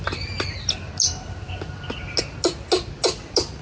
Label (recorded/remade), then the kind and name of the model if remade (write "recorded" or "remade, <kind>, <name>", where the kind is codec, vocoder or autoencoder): recorded